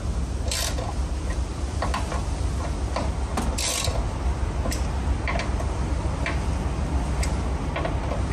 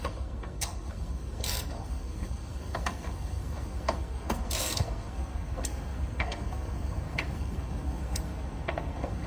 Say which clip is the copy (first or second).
second